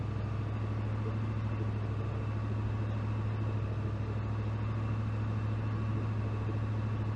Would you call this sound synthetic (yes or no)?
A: no